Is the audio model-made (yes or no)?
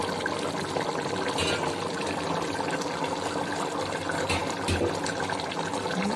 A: no